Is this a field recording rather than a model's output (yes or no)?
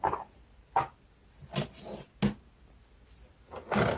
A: yes